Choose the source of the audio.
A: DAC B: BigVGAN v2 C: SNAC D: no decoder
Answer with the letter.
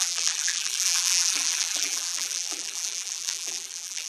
B